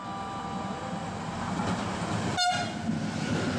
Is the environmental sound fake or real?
real